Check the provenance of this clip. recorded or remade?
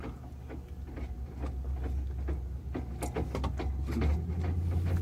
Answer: recorded